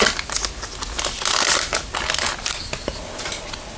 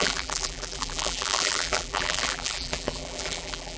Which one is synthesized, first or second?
second